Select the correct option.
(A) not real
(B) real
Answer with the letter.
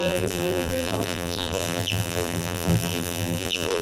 A